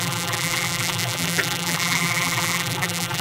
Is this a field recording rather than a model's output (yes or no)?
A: no